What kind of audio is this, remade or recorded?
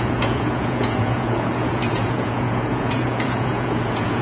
remade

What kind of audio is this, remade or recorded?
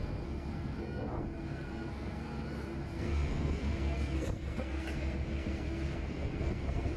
remade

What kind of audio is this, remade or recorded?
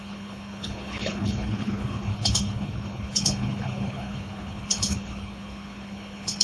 remade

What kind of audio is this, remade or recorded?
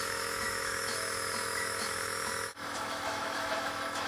remade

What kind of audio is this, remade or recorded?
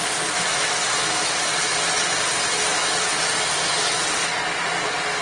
recorded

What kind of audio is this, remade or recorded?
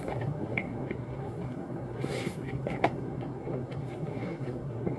remade